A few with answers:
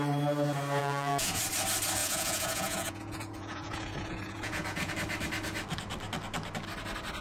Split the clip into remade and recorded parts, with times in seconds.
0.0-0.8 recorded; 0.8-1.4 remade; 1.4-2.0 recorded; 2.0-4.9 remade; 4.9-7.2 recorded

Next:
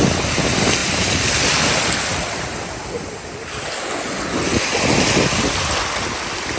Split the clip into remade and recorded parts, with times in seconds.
0.0-6.6 recorded

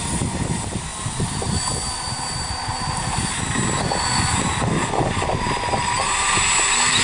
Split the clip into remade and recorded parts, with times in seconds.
0.0-7.0 recorded

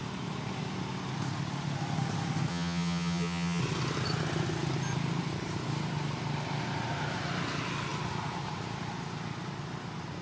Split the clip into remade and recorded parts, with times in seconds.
0.0-2.5 recorded; 2.5-3.6 remade; 3.6-10.2 recorded

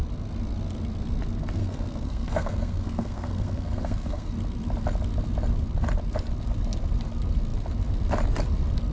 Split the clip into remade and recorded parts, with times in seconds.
0.0-1.6 recorded; 1.6-4.3 remade; 4.3-8.9 recorded

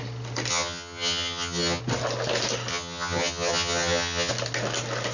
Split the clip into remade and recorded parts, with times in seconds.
0.0-0.5 recorded; 0.5-1.8 remade; 1.8-2.7 recorded; 2.7-4.3 remade; 4.3-5.1 recorded